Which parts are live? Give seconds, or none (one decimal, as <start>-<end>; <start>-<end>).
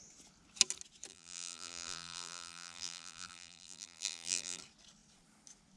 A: 0.0-1.1; 4.6-5.8